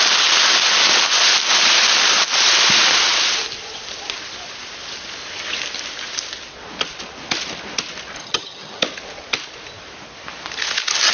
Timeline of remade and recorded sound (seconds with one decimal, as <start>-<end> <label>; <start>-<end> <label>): 0.0-8.2 recorded; 8.2-8.8 remade; 8.8-11.1 recorded